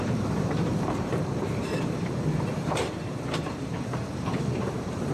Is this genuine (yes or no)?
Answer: no